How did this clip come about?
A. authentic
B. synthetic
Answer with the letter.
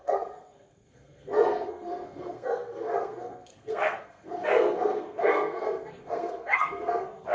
B